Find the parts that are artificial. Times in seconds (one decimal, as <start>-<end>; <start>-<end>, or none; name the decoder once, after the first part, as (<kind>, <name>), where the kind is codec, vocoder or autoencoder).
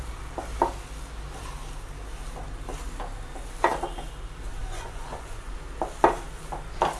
4.6-5.5 (vocoder, Vocos)